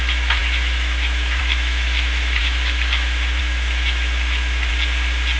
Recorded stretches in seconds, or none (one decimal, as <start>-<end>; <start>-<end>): 4.7-5.4